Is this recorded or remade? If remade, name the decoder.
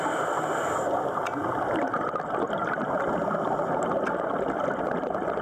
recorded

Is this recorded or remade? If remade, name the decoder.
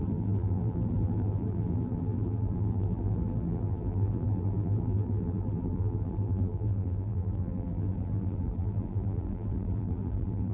remade, vocoder, BigVGAN v2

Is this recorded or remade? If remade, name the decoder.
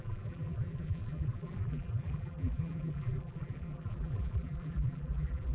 remade, vocoder, BigVGAN v2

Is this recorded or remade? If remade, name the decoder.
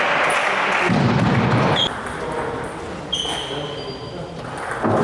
recorded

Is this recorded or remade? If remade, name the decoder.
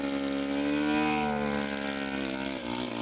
recorded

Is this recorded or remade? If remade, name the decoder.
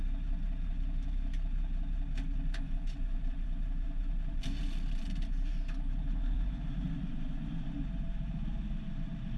remade, vocoder, BigVGAN v2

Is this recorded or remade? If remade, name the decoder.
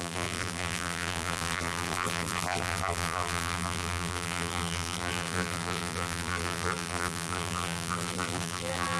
remade, vocoder, BigVGAN v2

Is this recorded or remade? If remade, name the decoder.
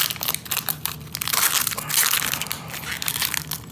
recorded